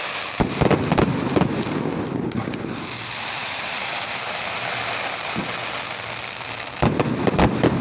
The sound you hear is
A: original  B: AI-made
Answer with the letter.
A